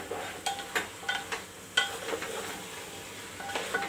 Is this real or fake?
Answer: real